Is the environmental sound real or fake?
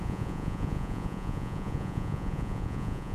fake